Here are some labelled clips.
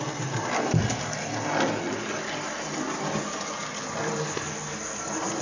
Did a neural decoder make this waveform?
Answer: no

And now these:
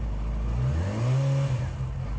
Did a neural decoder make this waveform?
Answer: no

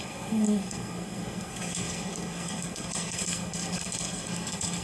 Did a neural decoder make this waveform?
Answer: yes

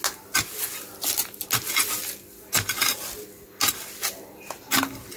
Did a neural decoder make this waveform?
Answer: no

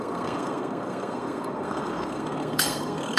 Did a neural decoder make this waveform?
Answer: yes